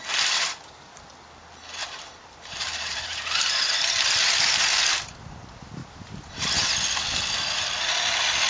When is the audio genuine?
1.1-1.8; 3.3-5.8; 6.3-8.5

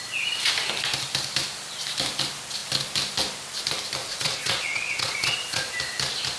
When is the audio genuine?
0.0-4.0; 5.7-6.4